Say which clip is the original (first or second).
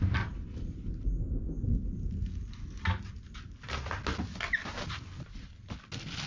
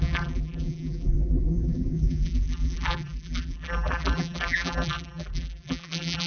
first